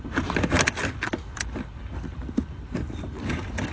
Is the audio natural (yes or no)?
yes